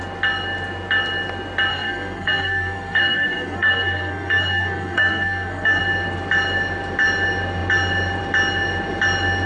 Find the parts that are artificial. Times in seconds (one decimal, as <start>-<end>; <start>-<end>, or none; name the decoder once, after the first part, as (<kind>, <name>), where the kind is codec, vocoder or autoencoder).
1.7-5.8 (codec, SNAC)